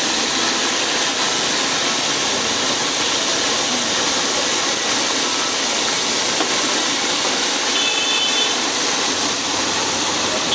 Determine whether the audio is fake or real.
real